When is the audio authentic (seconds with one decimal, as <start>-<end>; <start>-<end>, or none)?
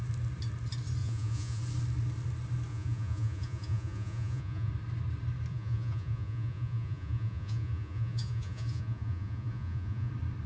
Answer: 0.0-1.0; 1.6-2.7; 4.7-5.5; 10.1-10.5